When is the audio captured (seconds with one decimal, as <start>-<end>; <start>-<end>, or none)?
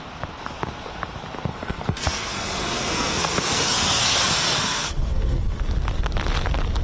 0.0-1.5; 5.6-6.8